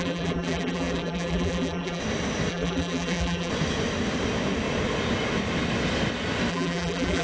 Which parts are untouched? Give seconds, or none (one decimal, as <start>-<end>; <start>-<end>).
2.0-2.5; 3.5-6.5